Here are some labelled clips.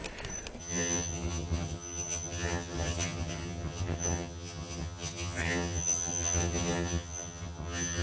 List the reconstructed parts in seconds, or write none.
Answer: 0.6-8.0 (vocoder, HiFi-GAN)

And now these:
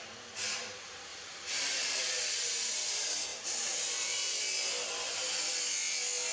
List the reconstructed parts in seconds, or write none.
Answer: 1.1-2.1 (vocoder, BigVGAN v2); 3.3-4.4

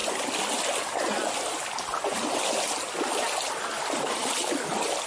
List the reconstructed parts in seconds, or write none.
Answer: none